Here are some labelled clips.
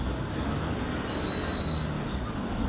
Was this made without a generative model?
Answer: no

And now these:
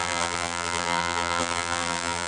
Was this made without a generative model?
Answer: no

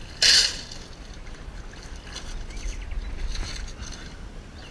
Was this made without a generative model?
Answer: yes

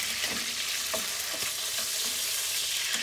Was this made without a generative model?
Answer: yes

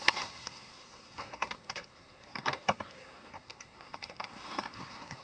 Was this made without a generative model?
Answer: no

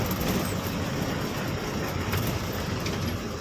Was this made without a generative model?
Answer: yes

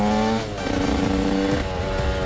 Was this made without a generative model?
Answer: yes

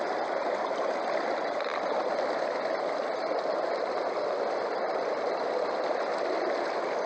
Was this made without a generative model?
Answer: yes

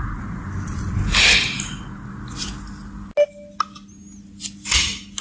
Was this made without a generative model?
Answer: yes